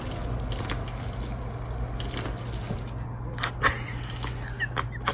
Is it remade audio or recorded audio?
recorded